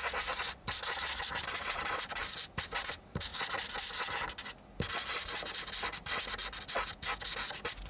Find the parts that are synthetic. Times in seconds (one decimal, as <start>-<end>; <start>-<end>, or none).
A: 0.0-2.2; 2.8-3.3; 5.1-6.4